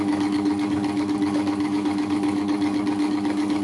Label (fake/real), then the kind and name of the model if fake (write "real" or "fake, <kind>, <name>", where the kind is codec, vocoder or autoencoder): fake, codec, DAC